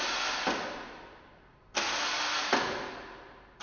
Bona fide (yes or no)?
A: yes